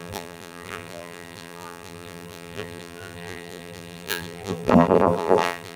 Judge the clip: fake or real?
fake